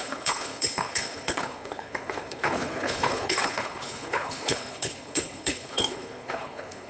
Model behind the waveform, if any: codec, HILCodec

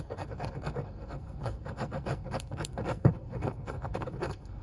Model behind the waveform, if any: codec, SNAC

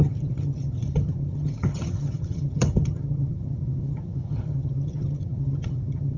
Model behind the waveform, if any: vocoder, HiFi-GAN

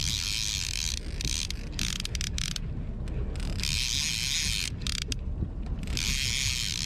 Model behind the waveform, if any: none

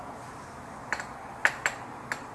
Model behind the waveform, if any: none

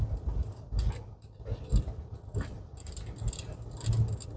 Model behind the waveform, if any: none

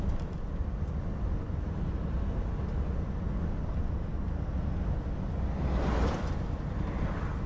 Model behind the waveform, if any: none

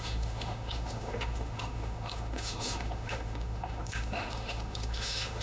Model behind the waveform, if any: autoencoder, DAC-VAE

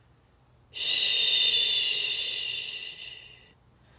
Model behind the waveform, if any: none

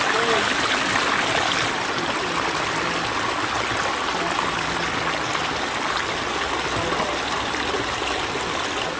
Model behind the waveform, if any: none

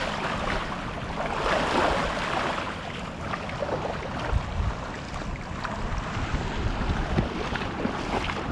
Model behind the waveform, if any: none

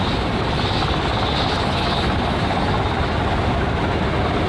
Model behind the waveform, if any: none